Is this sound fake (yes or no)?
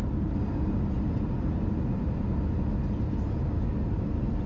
no